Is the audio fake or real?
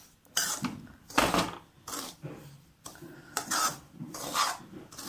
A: real